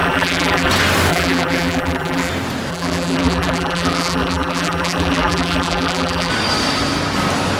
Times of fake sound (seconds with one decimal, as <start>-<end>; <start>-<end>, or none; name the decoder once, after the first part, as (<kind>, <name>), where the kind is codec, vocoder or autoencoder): 0.0-0.7 (vocoder, BigVGAN v2); 1.1-2.3; 2.7-6.3